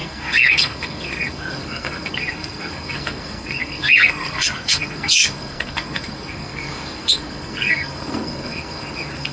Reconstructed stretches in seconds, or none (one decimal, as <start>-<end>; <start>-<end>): 0.0-9.3